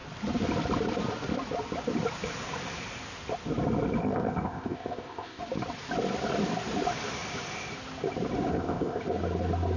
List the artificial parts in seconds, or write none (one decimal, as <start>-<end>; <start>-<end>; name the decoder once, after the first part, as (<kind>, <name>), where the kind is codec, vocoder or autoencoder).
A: 4.0-5.4 (codec, ZipCodec); 8.5-9.0